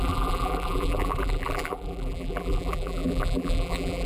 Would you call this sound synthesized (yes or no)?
yes